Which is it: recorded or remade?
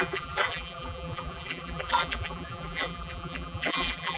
remade